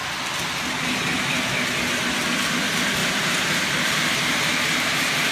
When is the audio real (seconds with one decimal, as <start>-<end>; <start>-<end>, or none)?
0.0-3.0